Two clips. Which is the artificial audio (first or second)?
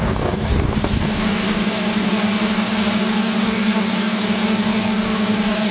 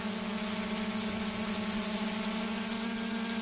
first